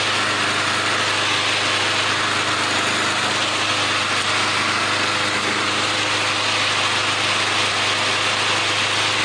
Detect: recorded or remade recorded